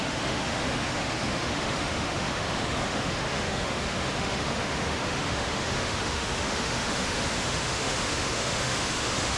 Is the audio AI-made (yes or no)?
yes